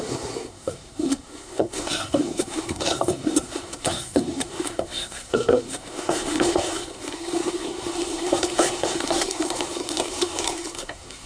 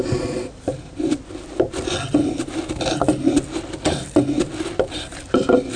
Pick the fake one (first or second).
first